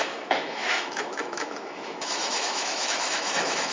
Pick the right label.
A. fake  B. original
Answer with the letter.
A